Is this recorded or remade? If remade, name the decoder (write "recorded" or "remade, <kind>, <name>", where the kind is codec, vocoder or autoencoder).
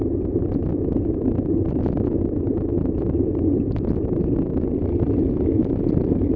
remade, vocoder, BigVGAN v2